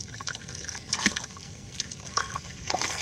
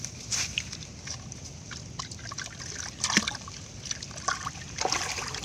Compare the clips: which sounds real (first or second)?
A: second